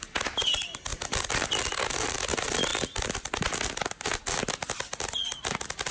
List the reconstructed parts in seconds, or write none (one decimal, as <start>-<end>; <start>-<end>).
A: none